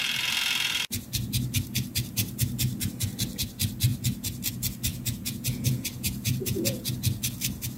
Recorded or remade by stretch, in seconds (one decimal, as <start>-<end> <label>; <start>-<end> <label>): 0.0-4.9 recorded; 4.9-6.9 remade; 6.9-7.8 recorded